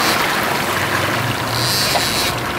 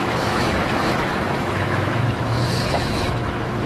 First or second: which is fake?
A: second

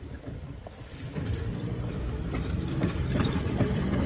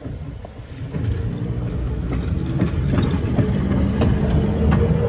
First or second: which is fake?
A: first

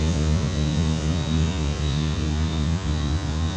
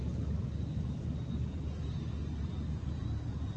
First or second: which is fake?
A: first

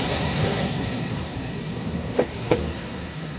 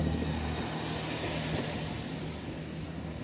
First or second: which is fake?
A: first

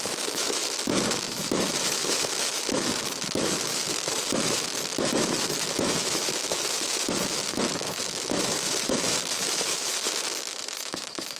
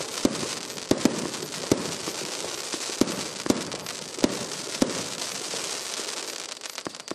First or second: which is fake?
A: first